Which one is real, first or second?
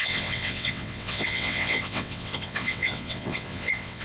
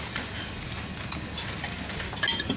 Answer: second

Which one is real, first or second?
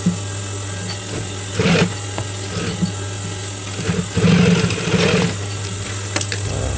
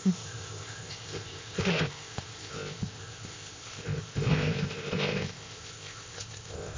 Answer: first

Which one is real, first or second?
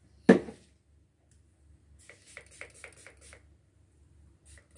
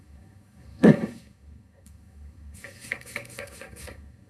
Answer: first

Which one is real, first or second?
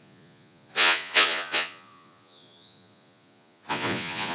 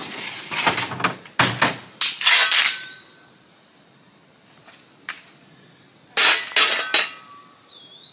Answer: second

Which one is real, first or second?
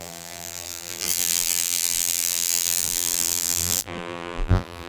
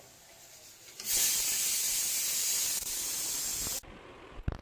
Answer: second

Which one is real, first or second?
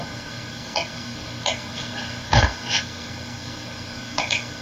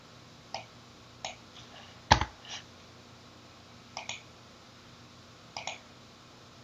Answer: second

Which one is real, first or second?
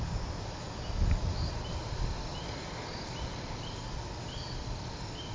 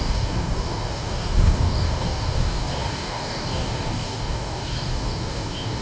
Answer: first